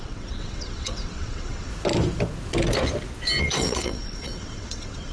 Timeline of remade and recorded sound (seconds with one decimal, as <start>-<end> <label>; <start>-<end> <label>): 0.0-1.7 remade; 1.7-3.4 recorded; 3.4-5.1 remade